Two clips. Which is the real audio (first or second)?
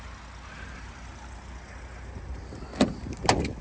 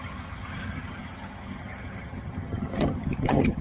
first